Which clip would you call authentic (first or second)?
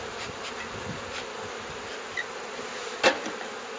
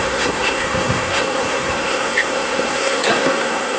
first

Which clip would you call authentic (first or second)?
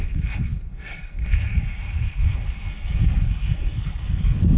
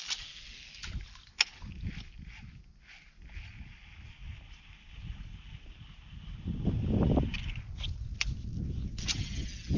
second